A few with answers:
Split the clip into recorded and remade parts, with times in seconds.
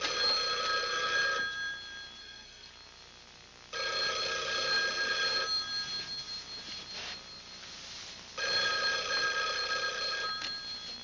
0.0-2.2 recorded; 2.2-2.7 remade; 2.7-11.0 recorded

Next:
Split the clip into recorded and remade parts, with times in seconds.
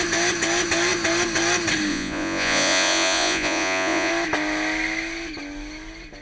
0.0-1.9 recorded; 1.9-4.1 remade; 4.1-6.2 recorded